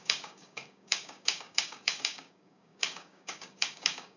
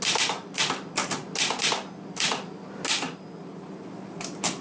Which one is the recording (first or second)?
second